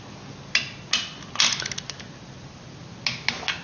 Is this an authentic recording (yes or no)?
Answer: yes